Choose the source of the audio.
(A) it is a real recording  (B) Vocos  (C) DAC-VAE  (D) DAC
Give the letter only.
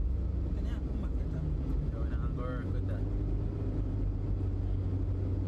A